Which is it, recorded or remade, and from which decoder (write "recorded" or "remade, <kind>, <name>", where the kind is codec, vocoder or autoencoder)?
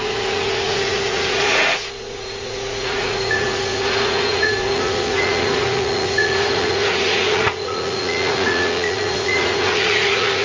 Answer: remade, vocoder, Vocos